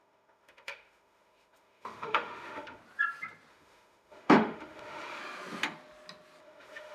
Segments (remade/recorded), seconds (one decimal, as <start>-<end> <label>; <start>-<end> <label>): 0.0-2.8 remade; 2.8-3.5 recorded; 3.5-5.2 remade; 5.2-6.4 recorded; 6.4-6.9 remade